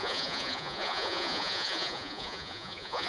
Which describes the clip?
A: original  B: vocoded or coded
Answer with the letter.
B